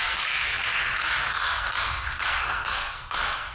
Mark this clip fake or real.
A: fake